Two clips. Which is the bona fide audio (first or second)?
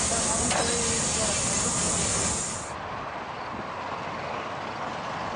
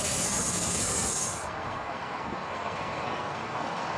first